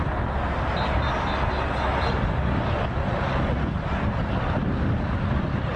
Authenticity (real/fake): real